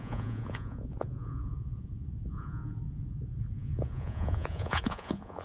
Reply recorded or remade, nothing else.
remade